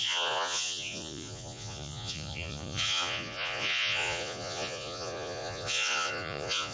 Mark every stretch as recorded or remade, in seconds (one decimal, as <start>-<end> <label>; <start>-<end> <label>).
0.0-6.7 remade